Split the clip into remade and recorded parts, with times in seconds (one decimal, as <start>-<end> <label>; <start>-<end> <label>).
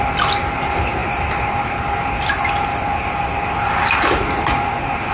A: 0.0-5.1 recorded